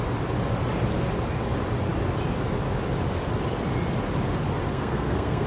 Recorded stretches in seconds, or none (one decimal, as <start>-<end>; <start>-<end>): 0.0-4.7